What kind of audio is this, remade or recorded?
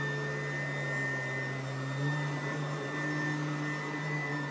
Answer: recorded